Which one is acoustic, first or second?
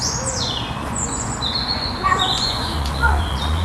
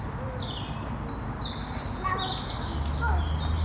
second